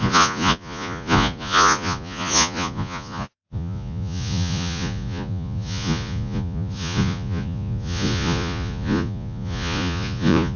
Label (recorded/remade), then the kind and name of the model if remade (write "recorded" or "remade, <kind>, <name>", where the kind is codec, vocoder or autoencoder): remade, vocoder, Vocos